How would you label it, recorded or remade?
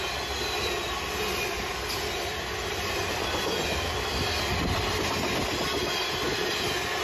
recorded